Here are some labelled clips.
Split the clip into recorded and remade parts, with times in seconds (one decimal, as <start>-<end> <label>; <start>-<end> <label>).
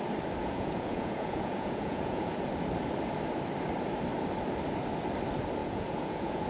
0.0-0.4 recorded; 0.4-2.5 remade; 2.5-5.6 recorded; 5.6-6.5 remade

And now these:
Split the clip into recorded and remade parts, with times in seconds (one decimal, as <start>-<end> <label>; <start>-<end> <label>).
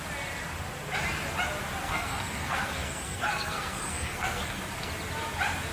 0.0-1.8 recorded; 1.8-4.9 remade; 4.9-5.7 recorded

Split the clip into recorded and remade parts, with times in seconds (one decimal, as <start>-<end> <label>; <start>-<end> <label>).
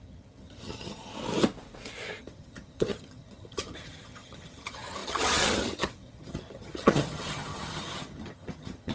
0.0-1.1 remade; 1.1-2.2 recorded; 2.2-8.9 remade